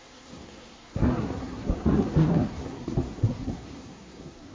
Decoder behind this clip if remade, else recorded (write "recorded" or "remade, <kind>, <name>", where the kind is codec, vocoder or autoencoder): remade, codec, SNAC